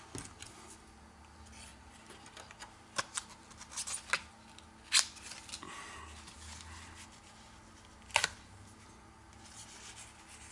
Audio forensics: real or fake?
real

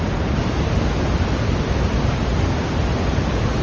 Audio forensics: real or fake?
real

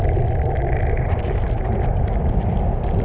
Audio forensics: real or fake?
real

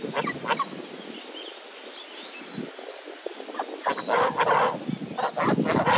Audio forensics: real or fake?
real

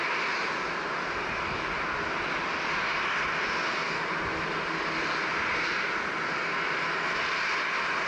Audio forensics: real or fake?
real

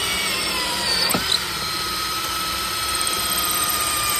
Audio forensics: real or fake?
fake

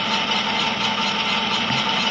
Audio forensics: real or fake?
real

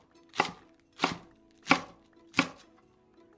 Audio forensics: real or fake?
real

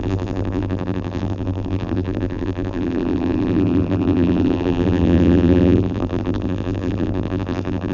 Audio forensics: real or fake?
fake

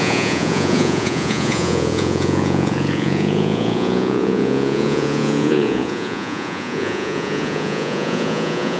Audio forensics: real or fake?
fake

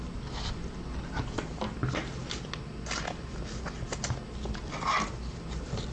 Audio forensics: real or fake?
real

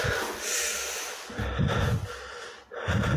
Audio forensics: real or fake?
real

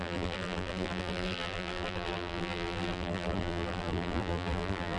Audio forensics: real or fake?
fake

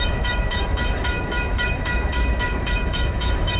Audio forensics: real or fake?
fake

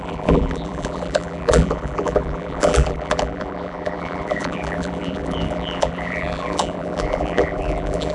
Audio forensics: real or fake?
fake